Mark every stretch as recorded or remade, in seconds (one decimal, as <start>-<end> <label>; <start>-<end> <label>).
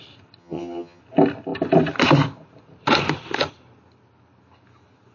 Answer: 0.0-0.4 recorded; 0.4-1.0 remade; 1.0-5.1 recorded